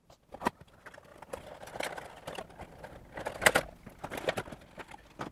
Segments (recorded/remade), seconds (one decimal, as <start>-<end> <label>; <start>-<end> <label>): 0.0-5.3 recorded